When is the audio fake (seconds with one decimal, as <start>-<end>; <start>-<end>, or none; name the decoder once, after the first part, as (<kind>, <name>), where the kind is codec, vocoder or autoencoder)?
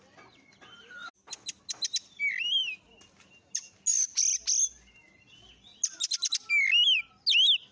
none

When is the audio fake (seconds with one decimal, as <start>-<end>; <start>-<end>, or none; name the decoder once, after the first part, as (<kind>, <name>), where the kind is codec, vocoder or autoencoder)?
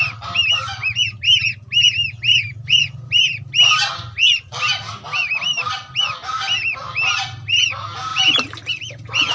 none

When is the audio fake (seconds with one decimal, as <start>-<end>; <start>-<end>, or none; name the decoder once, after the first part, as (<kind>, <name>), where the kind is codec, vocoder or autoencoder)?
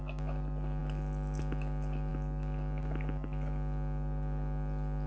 none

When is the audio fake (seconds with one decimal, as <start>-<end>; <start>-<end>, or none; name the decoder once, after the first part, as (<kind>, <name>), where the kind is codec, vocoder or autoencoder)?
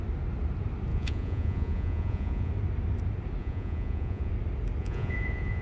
0.9-2.5 (vocoder, Vocos); 3.4-4.3; 4.8-5.6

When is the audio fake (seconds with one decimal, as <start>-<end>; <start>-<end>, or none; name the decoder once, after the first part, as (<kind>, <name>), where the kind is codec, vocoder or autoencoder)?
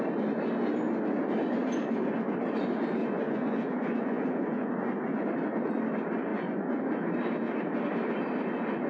3.0-4.7 (vocoder, Vocos); 6.3-6.8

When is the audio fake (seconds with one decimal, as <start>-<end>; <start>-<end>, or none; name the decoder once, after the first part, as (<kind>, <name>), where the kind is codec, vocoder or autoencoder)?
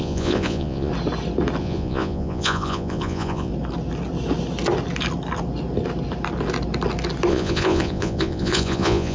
0.0-0.9 (vocoder, Vocos); 1.6-3.5; 7.3-9.1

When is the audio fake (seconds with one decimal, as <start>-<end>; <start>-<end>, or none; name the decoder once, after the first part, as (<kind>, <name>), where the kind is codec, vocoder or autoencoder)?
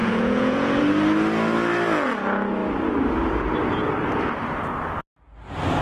0.0-0.8 (vocoder, Vocos)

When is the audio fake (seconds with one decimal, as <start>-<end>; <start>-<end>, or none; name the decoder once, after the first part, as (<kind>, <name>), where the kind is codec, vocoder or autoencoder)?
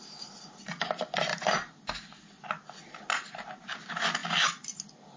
none